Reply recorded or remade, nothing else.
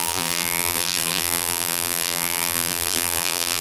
remade